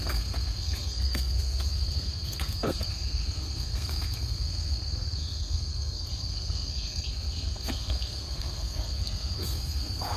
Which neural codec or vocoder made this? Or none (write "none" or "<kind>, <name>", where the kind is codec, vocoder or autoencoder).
codec, SNAC